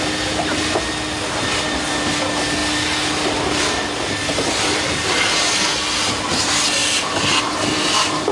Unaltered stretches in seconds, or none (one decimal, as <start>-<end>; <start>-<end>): 0.0-8.3